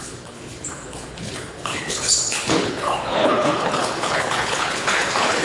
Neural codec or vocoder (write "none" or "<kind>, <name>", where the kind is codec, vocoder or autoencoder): codec, HILCodec